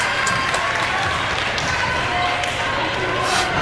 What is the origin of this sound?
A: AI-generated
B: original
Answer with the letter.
B